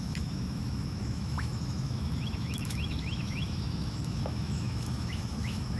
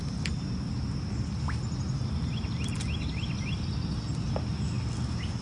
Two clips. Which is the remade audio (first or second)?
first